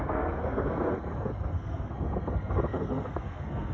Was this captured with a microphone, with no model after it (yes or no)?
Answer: no